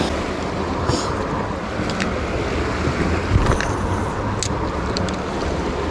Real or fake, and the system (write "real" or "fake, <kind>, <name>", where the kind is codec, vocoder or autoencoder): real